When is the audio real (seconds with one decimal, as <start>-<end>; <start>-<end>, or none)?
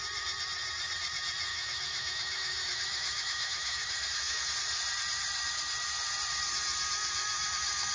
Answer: 0.0-1.5; 4.4-7.9